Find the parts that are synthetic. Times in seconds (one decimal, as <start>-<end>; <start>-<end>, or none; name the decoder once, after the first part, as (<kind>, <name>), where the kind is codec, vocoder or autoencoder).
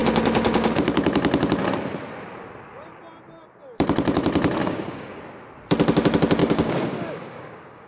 4.6-5.2 (codec, DAC); 6.4-7.9